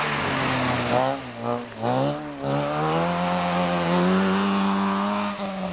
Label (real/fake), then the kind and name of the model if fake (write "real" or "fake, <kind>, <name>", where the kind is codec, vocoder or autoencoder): real